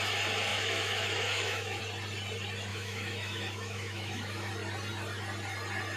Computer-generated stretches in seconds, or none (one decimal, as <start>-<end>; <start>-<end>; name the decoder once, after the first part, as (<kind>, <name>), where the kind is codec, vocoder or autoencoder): 0.5-1.8 (autoencoder, DAC-VAE); 2.7-4.5